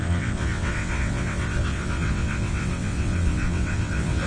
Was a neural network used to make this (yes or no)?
yes